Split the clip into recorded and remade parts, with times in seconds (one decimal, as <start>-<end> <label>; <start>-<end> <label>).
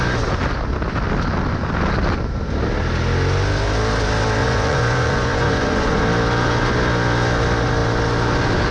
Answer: 0.0-4.4 recorded; 4.4-6.0 remade; 6.0-8.7 recorded